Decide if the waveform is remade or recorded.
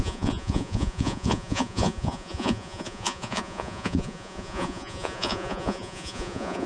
remade